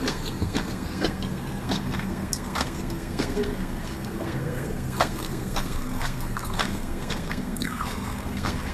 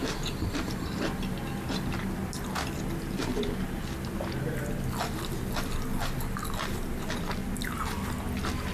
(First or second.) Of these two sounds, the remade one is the first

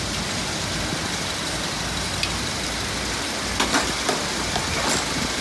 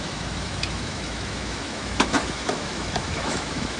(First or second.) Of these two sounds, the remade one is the second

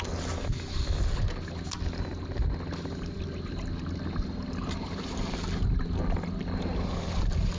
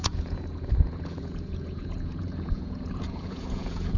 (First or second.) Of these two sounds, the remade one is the second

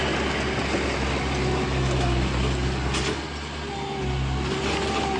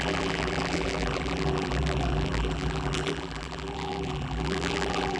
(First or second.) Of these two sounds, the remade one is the second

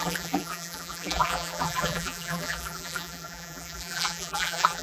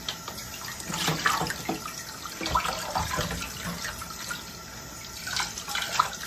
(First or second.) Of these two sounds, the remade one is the first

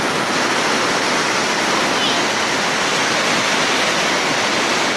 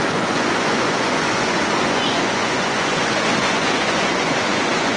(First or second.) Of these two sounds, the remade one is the second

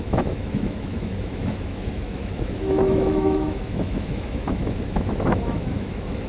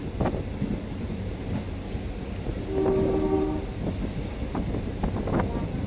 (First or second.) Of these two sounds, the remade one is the first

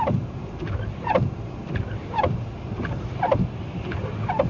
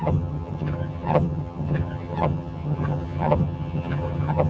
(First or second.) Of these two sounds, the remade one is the second